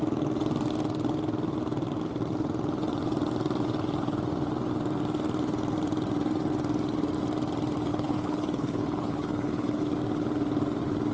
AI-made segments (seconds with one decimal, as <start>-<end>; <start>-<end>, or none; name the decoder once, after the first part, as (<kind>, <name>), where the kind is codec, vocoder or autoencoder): 7.9-9.8 (codec, HILCodec)

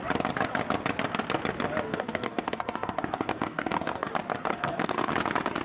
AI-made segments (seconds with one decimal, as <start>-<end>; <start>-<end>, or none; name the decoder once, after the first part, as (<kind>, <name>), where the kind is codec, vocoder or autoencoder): 1.9-4.1 (codec, SNAC); 4.5-5.1